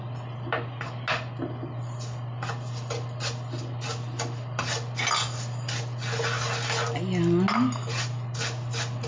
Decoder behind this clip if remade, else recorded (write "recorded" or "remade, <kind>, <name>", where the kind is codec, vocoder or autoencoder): recorded